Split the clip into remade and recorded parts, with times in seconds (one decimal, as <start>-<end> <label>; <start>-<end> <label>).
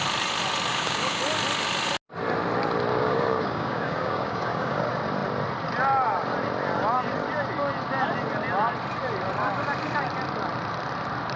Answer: 0.0-0.7 recorded; 0.7-1.2 remade; 1.2-2.9 recorded; 2.9-4.8 remade; 4.8-11.4 recorded